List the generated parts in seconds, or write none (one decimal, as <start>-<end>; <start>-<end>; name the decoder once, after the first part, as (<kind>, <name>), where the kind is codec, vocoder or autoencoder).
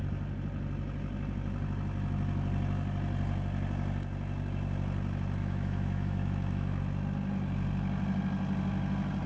5.4-6.8 (autoencoder, DAC-VAE)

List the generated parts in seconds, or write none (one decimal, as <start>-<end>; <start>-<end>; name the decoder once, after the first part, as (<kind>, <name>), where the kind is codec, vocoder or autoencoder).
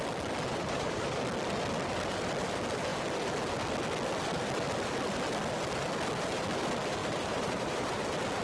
0.5-1.2 (vocoder, BigVGAN v2); 7.0-8.0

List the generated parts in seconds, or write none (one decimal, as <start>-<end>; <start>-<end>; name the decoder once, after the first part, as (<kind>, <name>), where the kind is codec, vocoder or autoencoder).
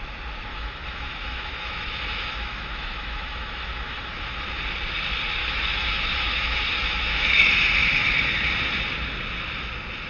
0.5-4.6 (autoencoder, DAC-VAE); 5.4-7.5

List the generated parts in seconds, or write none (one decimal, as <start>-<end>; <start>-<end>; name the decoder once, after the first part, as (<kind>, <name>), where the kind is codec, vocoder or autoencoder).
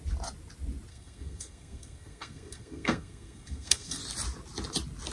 0.9-4.0 (codec, SNAC)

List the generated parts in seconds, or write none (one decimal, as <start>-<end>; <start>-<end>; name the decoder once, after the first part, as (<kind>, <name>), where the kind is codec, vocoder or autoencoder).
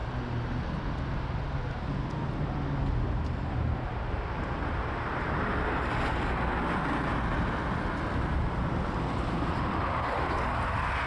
none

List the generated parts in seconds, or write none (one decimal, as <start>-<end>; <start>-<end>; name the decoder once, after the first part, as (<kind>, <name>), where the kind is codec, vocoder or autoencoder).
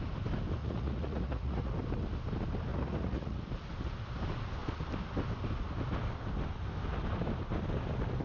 0.6-1.7 (vocoder, Vocos); 2.7-3.4